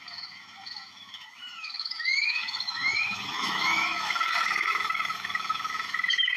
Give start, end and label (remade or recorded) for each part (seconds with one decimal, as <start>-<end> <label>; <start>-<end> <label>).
0.0-6.4 remade